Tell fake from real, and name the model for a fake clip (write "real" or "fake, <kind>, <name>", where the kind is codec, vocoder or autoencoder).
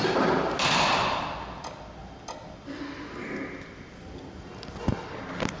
real